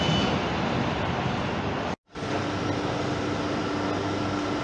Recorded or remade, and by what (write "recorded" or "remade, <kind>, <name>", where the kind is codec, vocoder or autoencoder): recorded